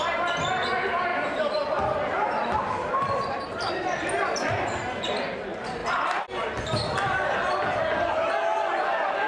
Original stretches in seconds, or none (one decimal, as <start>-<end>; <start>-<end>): 0.0-1.1; 3.7-4.2; 4.8-5.8; 7.8-9.3